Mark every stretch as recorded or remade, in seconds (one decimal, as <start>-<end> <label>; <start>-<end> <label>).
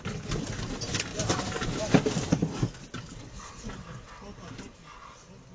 0.0-5.5 recorded